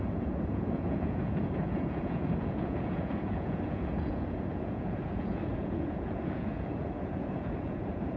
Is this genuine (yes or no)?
no